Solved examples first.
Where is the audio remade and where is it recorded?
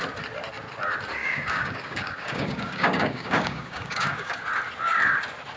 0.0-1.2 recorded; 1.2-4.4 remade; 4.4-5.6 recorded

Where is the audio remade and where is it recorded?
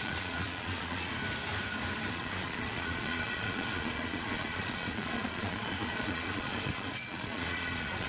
0.0-1.1 remade; 1.1-2.1 recorded; 2.1-8.1 remade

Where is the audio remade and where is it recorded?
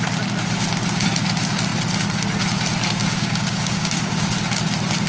0.0-3.0 recorded; 3.0-4.3 remade; 4.3-5.1 recorded